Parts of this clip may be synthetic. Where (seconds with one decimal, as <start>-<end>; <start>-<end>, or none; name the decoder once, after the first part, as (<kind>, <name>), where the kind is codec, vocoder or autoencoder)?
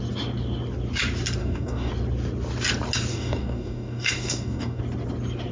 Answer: 1.4-1.9 (codec, DAC); 3.1-4.8